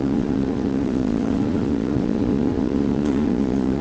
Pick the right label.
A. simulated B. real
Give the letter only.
A